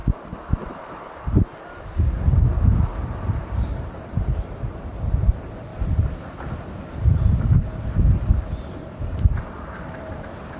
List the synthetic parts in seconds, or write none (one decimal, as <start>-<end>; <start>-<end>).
2.4-5.7; 6.3-10.6